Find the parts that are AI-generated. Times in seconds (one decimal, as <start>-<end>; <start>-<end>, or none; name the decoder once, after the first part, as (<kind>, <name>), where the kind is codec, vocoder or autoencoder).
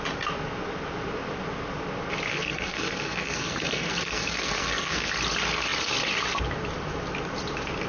2.3-5.1 (codec, SNAC)